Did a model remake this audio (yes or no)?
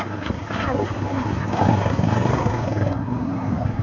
yes